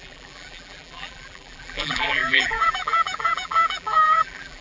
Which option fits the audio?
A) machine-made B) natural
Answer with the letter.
A